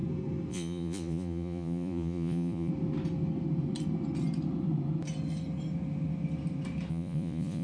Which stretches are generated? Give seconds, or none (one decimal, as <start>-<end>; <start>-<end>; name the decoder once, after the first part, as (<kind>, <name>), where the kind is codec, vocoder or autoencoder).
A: 0.5-2.7 (vocoder, Vocos); 6.9-7.6